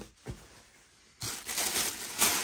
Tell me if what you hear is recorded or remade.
recorded